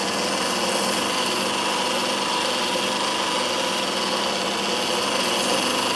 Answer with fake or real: real